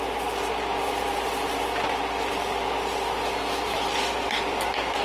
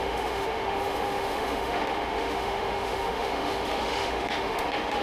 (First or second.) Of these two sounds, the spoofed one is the second